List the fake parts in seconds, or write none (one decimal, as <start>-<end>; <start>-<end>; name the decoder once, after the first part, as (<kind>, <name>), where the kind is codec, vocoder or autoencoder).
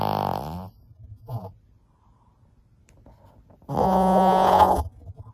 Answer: 0.9-1.5 (vocoder, Vocos); 3.8-5.3